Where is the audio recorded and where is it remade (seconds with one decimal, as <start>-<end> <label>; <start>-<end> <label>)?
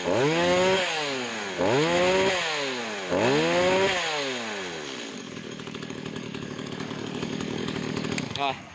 0.0-1.3 remade; 1.3-5.1 recorded; 5.1-8.7 remade